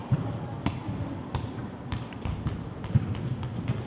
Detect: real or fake real